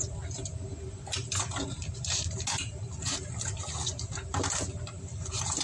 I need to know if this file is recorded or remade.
recorded